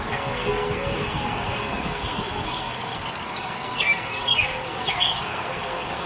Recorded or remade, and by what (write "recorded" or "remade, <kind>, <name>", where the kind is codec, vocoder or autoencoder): remade, codec, SNAC